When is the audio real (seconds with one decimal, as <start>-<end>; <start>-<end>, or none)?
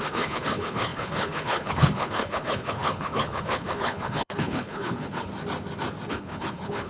5.3-6.1